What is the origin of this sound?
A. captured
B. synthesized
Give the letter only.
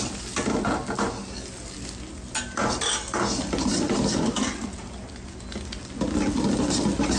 A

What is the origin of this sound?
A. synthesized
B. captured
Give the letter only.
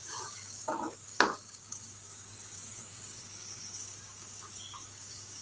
A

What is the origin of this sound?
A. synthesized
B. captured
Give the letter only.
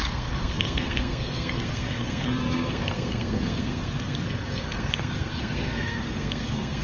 A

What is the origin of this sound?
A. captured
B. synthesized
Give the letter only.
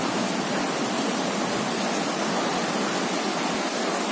A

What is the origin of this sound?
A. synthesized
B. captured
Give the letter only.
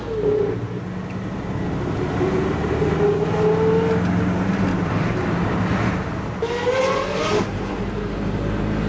B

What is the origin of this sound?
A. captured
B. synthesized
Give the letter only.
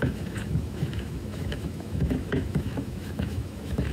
B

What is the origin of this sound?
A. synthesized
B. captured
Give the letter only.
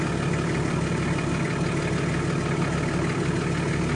B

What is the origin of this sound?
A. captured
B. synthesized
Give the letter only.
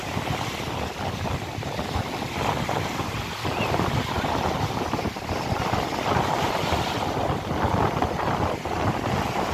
A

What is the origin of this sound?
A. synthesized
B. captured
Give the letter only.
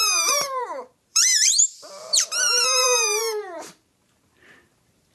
A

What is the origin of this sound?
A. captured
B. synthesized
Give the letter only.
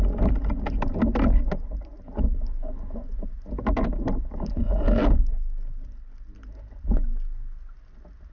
A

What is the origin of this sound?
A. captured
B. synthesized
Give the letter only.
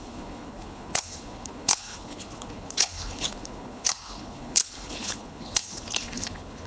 B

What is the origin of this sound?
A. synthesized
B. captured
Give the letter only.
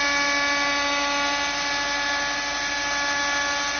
B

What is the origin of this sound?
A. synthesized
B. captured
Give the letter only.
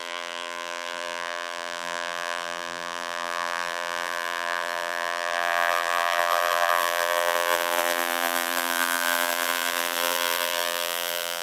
A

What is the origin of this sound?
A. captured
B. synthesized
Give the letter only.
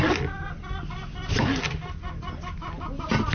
A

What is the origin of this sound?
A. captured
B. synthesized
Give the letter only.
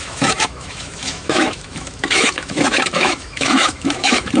B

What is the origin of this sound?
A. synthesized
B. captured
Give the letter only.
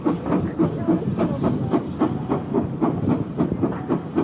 B